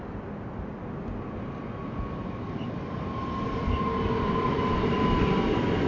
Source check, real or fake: real